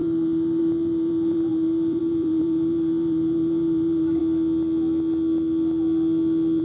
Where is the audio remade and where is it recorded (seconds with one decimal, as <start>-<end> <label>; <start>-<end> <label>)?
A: 0.0-4.2 remade; 4.2-6.6 recorded